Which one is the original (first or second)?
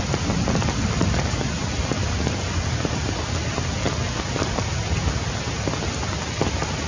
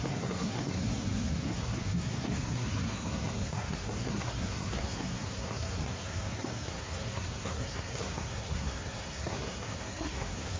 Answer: first